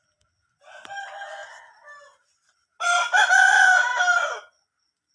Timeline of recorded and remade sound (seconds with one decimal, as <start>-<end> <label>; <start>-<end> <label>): 0.0-5.1 recorded